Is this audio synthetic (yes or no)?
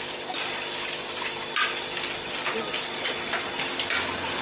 no